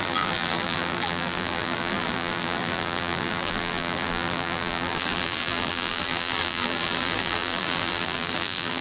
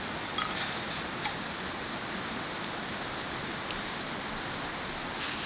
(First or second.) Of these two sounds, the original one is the second